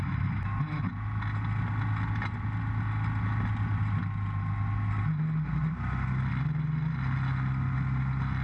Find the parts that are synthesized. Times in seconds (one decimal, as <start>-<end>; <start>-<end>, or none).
none